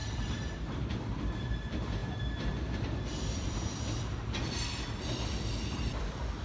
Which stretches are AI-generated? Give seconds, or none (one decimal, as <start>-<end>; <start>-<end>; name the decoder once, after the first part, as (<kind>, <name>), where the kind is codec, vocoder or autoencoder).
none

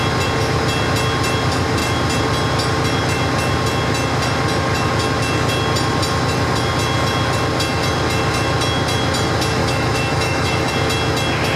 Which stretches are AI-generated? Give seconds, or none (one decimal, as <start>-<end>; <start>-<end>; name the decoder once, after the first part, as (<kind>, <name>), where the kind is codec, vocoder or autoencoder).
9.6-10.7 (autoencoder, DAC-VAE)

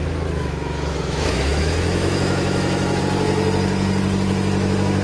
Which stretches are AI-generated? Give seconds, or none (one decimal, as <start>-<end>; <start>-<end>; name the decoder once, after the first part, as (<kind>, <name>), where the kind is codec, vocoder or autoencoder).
0.0-3.0 (autoencoder, DAC-VAE)

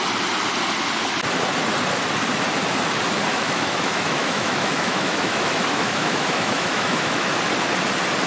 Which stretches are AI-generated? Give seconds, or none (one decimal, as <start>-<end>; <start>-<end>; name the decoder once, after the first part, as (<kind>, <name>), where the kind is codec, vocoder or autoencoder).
3.3-7.3 (autoencoder, DAC-VAE)